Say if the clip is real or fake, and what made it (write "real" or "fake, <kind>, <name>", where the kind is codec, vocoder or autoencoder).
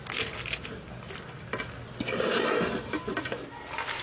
real